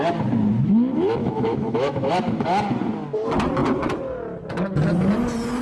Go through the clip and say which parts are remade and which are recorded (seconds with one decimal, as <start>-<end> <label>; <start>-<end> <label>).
0.0-1.2 recorded; 1.2-2.1 remade; 2.1-5.6 recorded